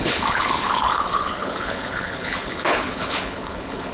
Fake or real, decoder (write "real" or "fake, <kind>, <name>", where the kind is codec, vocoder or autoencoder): fake, codec, HILCodec